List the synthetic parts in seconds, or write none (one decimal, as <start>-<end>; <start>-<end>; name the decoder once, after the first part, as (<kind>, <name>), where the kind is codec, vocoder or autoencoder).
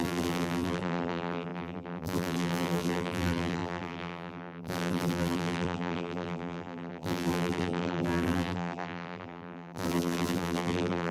0.0-11.1 (vocoder, BigVGAN v2)